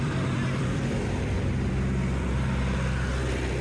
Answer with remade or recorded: remade